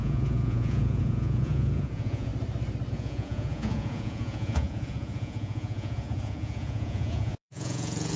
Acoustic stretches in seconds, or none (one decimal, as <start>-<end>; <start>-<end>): 2.3-2.9